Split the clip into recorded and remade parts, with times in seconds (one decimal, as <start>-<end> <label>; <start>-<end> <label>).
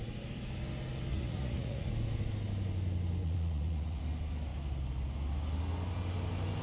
0.0-1.1 recorded; 1.1-1.9 remade; 1.9-3.2 recorded; 3.2-4.0 remade; 4.0-6.6 recorded